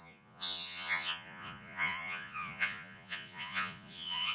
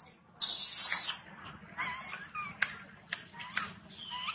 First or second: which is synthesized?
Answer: first